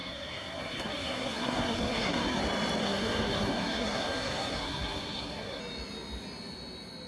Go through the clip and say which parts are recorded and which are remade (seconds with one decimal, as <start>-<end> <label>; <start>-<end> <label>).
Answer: 0.0-2.4 remade; 2.4-2.8 recorded; 2.8-5.6 remade; 5.6-7.1 recorded